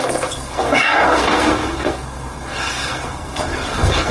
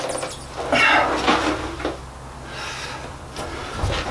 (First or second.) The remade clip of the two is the first